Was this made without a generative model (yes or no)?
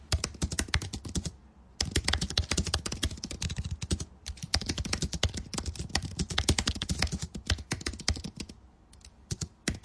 yes